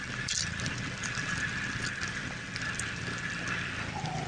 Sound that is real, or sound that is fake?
real